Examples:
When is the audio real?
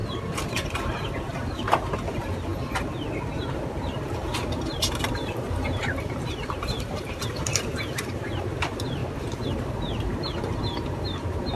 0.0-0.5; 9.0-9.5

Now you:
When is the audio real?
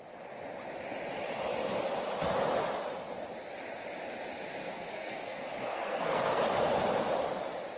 0.0-4.6; 6.4-7.8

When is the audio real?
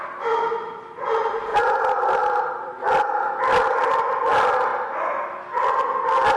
0.0-1.5; 2.2-4.7; 5.3-6.4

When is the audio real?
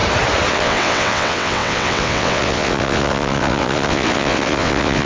0.0-0.5